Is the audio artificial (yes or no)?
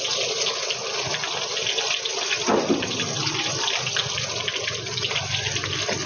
no